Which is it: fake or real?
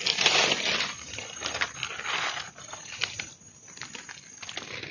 real